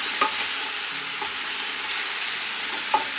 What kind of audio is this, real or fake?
real